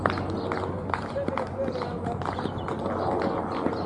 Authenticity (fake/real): real